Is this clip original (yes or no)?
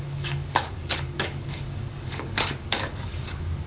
no